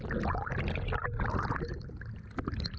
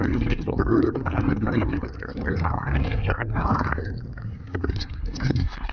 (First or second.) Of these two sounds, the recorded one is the first